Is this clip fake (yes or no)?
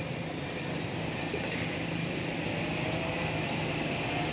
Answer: yes